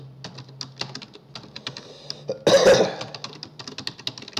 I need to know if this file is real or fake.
real